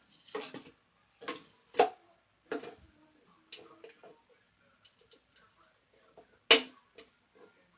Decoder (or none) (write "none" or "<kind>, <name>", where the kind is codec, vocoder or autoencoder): none